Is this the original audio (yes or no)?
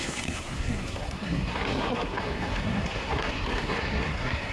no